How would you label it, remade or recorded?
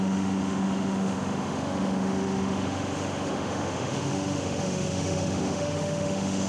remade